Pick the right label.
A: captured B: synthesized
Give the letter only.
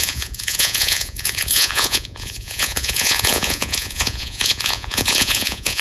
B